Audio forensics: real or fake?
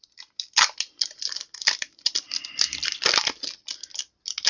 real